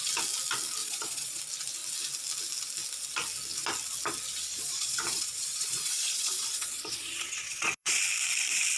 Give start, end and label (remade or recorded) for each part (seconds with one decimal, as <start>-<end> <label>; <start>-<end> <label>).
0.0-0.8 recorded; 0.8-1.4 remade; 1.4-4.5 recorded; 4.5-8.0 remade; 8.0-8.8 recorded